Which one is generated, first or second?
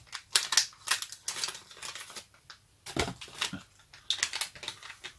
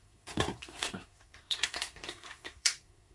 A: second